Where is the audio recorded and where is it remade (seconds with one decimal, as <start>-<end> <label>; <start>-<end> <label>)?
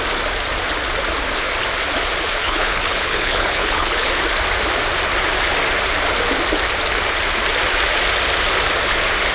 0.0-2.4 recorded; 2.4-4.1 remade; 4.1-9.3 recorded